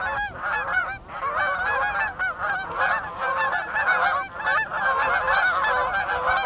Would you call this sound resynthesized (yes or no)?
no